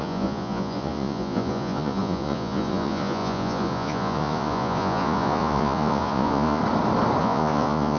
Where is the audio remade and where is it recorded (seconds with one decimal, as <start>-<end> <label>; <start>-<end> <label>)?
0.0-6.6 remade; 6.6-7.2 recorded; 7.2-8.0 remade